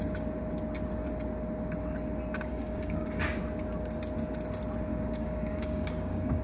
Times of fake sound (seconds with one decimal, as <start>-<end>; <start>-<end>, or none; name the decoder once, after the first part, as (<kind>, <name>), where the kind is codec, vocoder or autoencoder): 2.5-3.4 (codec, DAC); 4.9-6.4